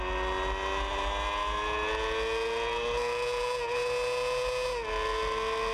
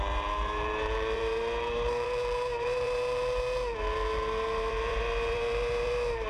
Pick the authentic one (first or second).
first